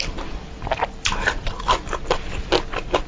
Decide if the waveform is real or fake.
real